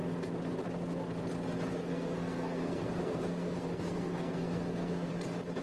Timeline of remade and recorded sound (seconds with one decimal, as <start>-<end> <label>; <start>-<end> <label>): 0.0-1.7 recorded; 1.7-5.1 remade; 5.1-5.6 recorded